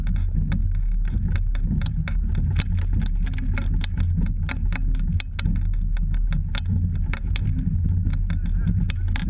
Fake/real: real